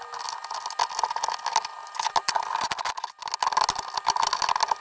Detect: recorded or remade recorded